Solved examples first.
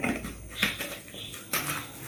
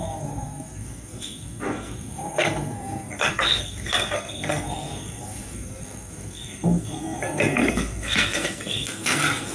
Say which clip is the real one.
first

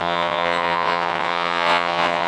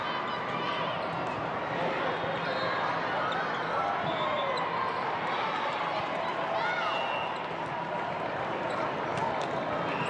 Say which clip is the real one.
second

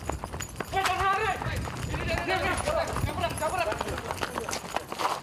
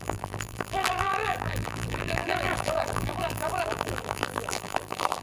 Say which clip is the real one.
first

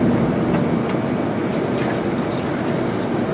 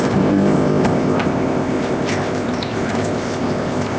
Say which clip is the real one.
first